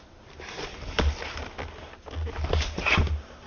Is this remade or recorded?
recorded